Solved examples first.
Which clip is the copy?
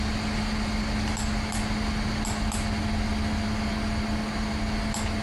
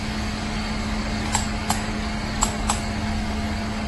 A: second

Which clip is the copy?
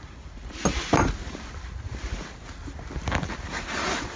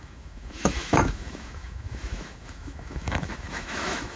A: second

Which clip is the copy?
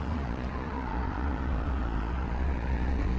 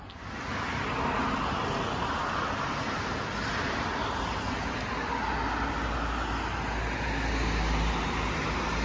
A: first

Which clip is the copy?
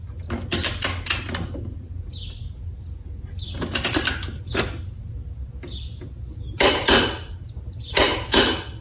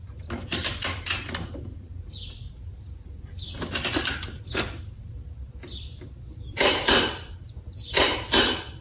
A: second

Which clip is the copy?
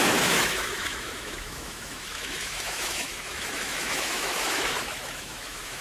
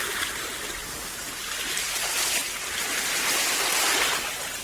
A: first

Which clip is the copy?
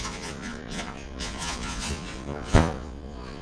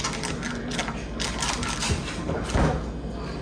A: first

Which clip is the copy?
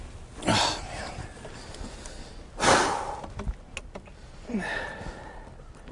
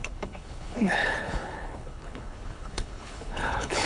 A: second